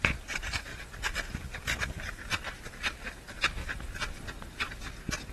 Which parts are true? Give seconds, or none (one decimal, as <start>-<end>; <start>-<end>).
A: 0.7-2.7; 3.6-5.3